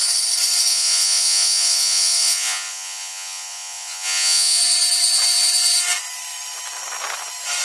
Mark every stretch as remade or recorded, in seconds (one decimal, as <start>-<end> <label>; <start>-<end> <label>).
0.0-0.7 recorded; 0.7-4.6 remade; 4.6-7.6 recorded